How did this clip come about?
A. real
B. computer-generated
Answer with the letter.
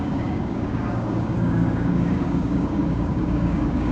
B